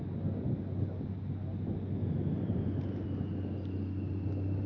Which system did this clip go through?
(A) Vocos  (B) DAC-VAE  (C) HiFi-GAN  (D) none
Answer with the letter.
D